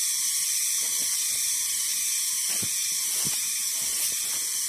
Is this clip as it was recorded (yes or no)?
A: yes